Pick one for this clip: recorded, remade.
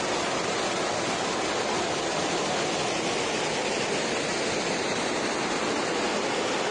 recorded